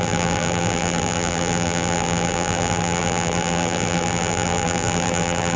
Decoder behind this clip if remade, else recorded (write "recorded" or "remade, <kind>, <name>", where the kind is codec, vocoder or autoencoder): remade, vocoder, BigVGAN v2